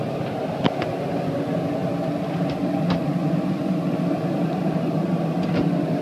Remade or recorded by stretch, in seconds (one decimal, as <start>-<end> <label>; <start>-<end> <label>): 0.0-6.0 recorded